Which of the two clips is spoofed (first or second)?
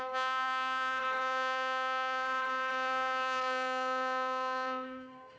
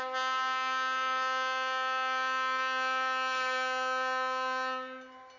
first